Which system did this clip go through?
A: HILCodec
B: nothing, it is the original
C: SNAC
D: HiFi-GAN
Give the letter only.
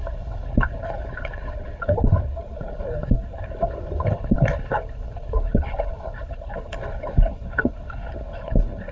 A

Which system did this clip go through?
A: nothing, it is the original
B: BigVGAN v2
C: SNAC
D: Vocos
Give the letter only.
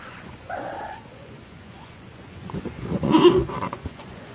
D